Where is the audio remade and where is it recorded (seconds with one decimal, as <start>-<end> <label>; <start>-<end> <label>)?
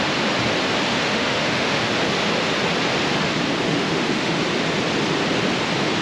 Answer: 0.0-0.9 recorded; 0.9-1.8 remade; 1.8-3.7 recorded; 3.7-4.4 remade; 4.4-6.0 recorded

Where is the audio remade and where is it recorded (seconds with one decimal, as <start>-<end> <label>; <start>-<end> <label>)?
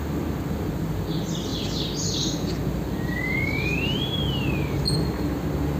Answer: 0.0-5.8 recorded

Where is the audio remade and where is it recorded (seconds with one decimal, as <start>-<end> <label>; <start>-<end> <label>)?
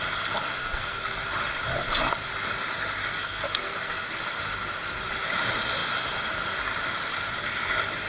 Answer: 0.0-0.6 recorded; 0.6-1.1 remade; 1.1-3.0 recorded; 3.0-4.1 remade; 4.1-8.1 recorded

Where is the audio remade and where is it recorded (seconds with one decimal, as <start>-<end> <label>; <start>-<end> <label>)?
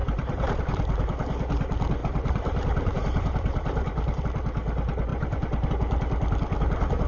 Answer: 0.0-0.6 remade; 0.6-2.0 recorded; 2.0-4.2 remade; 4.2-5.1 recorded; 5.1-5.7 remade; 5.7-7.1 recorded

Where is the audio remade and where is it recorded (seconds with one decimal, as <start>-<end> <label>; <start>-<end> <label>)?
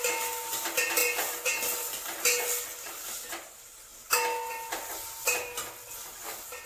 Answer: 0.0-5.2 recorded; 5.2-5.7 remade; 5.7-6.7 recorded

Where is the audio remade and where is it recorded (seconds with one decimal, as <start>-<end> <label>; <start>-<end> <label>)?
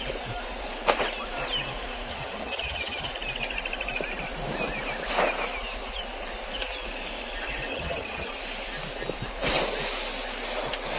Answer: 0.0-2.1 recorded; 2.1-3.1 remade; 3.1-7.7 recorded; 7.7-8.3 remade; 8.3-11.0 recorded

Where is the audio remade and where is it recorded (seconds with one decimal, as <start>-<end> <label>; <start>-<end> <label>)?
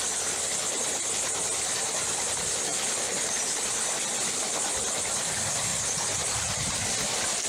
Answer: 0.0-5.7 recorded; 5.7-6.7 remade; 6.7-7.5 recorded